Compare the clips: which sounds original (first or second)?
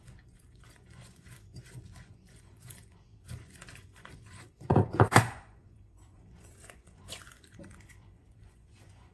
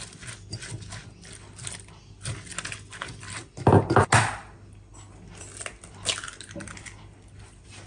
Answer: second